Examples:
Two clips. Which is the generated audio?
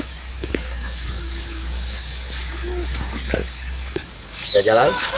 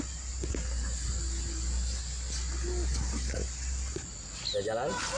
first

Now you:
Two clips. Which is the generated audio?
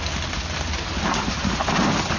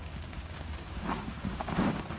second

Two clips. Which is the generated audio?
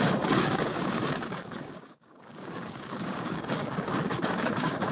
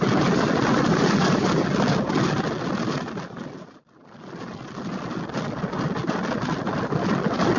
first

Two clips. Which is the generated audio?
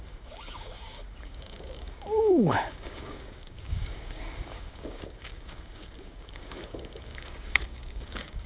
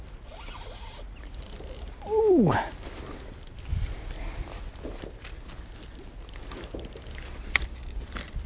first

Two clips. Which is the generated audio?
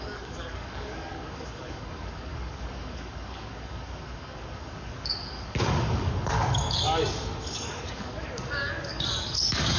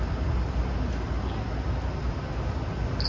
first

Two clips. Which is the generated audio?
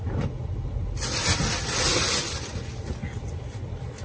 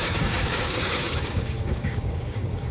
second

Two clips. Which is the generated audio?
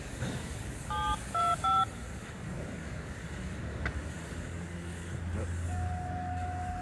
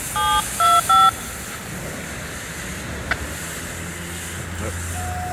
first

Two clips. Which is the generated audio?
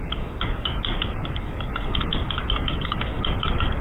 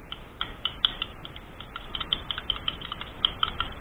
first